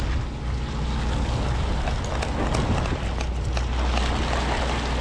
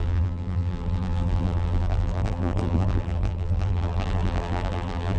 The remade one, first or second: second